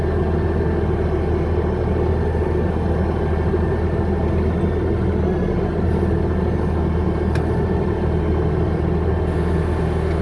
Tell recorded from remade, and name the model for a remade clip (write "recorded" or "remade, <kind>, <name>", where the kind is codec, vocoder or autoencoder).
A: recorded